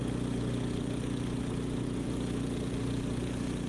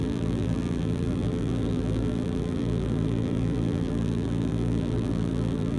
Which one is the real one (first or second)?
first